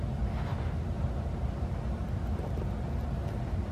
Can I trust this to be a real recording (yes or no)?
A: yes